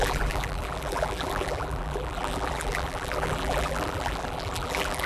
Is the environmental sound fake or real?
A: fake